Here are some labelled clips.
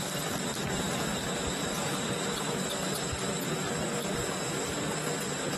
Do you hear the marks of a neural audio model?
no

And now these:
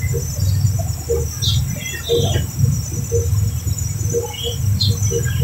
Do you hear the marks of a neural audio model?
no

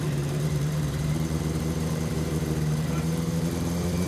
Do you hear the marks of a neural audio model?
yes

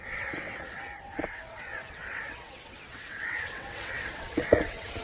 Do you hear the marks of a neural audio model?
yes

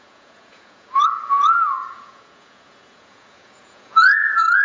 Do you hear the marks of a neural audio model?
yes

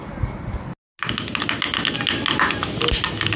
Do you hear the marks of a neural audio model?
no